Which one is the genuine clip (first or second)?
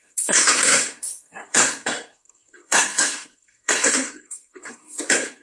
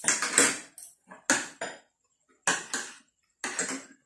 second